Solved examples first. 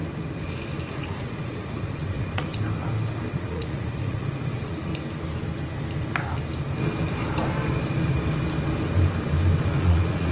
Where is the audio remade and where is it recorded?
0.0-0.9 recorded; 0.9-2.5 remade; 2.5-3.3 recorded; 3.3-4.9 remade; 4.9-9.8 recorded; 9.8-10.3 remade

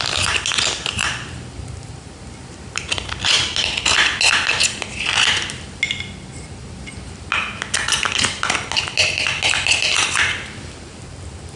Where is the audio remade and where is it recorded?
0.0-11.6 recorded